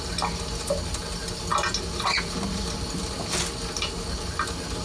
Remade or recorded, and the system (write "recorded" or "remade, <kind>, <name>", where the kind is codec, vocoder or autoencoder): recorded